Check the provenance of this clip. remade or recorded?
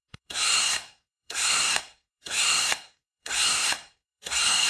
remade